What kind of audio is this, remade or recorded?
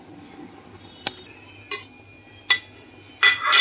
recorded